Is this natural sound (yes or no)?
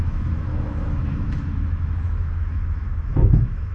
no